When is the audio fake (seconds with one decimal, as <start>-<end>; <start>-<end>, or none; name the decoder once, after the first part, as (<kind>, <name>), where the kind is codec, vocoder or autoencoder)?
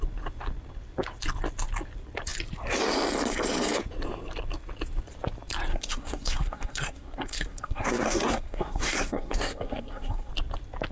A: 5.7-10.3 (codec, SNAC)